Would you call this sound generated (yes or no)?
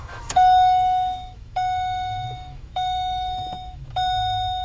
yes